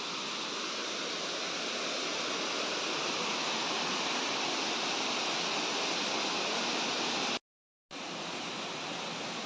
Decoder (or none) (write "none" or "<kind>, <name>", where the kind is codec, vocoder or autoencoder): none